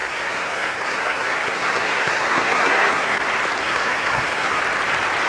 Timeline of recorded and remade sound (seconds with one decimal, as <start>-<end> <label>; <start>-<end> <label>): 0.0-3.2 remade; 3.2-3.6 recorded; 3.6-4.6 remade; 4.6-5.3 recorded